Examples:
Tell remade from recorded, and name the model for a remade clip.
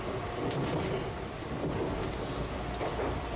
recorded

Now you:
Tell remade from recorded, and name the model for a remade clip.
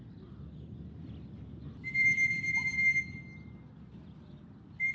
recorded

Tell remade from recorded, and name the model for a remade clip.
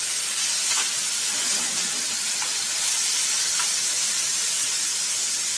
recorded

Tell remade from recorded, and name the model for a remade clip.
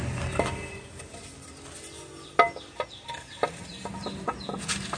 recorded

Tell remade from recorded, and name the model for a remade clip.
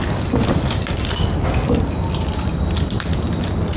recorded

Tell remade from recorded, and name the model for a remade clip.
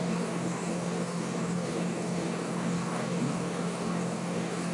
remade, codec, DAC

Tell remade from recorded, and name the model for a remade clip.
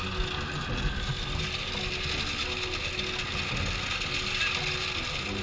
recorded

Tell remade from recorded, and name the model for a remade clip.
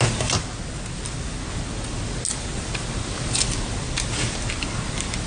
recorded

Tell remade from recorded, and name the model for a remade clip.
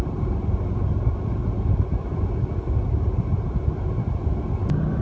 recorded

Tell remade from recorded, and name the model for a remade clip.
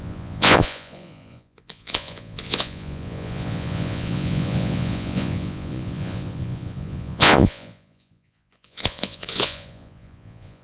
remade, vocoder, Vocos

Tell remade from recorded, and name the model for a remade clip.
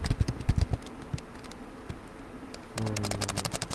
recorded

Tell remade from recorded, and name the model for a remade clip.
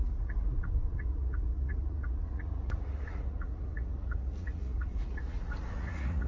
remade, vocoder, Vocos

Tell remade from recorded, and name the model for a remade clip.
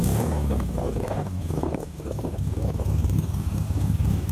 remade, codec, DAC